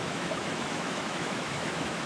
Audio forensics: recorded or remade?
remade